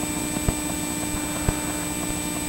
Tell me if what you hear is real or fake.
real